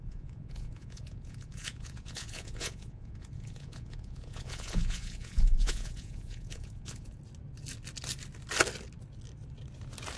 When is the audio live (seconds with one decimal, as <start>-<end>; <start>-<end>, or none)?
7.2-10.2